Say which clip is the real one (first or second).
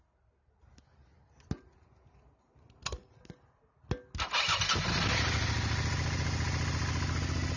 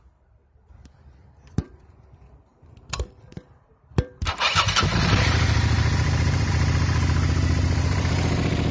first